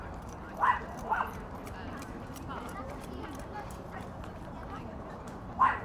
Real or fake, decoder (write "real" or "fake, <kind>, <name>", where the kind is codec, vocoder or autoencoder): fake, vocoder, BigVGAN v2